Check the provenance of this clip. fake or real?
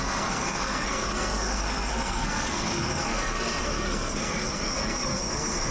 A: fake